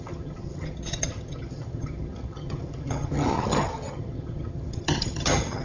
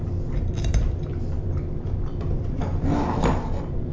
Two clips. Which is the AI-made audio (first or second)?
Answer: first